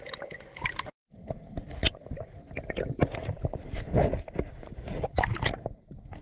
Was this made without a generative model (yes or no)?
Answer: yes